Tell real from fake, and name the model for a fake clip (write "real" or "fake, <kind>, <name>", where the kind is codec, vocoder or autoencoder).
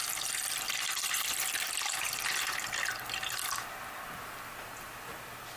fake, vocoder, BigVGAN v2